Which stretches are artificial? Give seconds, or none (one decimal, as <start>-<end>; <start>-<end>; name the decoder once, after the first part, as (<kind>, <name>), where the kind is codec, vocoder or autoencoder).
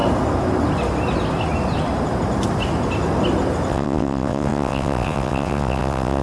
3.7-6.2 (vocoder, WaveNeXt)